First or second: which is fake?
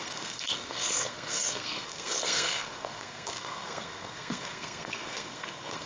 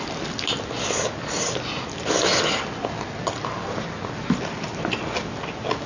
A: first